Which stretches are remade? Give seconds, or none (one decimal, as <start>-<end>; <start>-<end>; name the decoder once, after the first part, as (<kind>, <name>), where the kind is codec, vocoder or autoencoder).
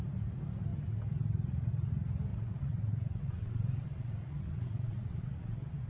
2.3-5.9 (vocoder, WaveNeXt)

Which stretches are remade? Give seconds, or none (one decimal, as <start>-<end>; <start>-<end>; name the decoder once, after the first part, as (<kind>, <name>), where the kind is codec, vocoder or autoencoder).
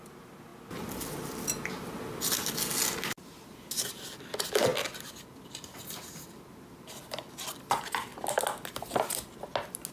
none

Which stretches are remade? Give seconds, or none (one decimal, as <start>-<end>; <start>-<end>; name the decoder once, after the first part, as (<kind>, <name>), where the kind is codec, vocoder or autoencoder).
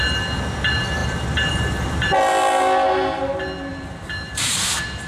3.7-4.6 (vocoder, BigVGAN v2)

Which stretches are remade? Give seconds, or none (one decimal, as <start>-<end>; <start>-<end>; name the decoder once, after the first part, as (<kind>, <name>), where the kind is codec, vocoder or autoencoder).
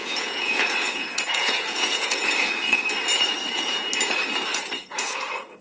0.0-2.8 (vocoder, Vocos); 3.4-3.9; 4.5-5.6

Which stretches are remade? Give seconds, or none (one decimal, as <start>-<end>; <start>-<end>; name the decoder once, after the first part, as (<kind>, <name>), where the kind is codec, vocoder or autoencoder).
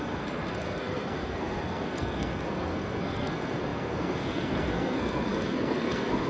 0.0-6.3 (codec, SNAC)